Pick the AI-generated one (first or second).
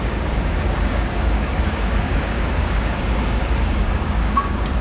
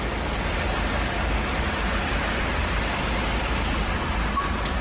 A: first